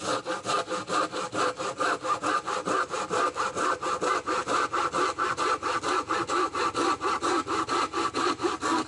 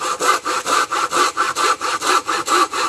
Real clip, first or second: first